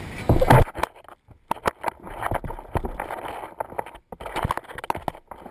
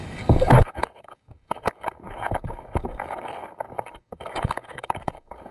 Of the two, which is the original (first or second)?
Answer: first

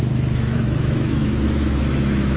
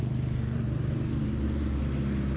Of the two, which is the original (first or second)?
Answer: second